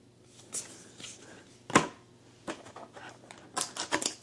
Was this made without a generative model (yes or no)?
yes